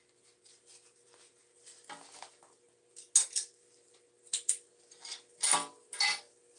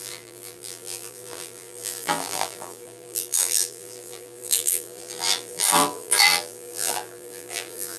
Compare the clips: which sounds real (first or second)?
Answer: first